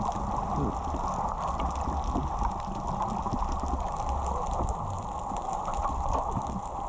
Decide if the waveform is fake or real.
real